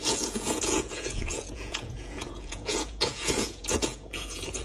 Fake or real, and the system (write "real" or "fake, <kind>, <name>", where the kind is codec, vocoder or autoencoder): fake, vocoder, Vocos